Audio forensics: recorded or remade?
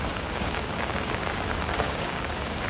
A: remade